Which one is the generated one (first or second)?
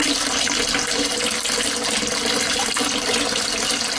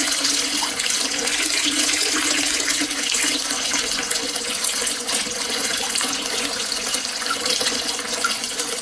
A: second